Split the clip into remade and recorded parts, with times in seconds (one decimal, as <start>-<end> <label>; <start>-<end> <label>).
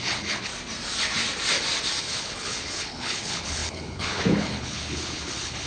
0.0-0.5 remade; 0.5-2.0 recorded; 2.0-5.7 remade